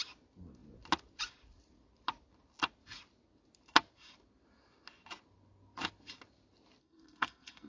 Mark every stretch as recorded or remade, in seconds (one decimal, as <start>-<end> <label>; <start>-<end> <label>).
0.0-6.8 recorded; 6.8-7.7 remade